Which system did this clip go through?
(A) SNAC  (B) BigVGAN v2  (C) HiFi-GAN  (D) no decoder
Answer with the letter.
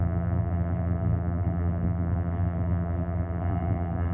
B